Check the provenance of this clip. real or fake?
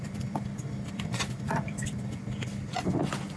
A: fake